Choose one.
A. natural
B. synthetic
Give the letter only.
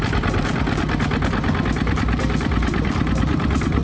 B